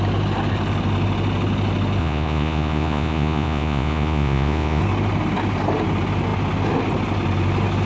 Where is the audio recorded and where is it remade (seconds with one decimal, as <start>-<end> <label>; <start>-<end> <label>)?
0.0-2.0 recorded; 2.0-4.8 remade; 4.8-7.9 recorded